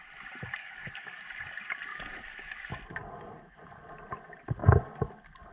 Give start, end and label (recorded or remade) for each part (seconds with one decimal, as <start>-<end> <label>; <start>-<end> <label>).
0.0-0.6 recorded; 0.6-1.2 remade; 1.2-1.9 recorded; 1.9-2.7 remade; 2.7-5.5 recorded